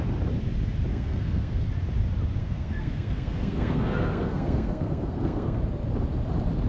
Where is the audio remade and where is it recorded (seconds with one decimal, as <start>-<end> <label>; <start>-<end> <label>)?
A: 0.0-0.9 recorded; 0.9-1.7 remade; 1.7-2.4 recorded; 2.4-5.6 remade; 5.6-6.7 recorded